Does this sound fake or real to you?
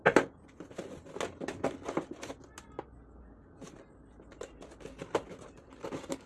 real